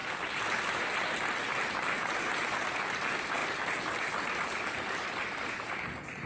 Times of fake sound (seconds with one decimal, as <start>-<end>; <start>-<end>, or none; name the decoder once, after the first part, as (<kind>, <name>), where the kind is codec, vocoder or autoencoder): none